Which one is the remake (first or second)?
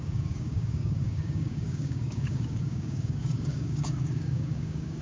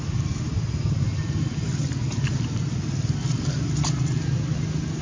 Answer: first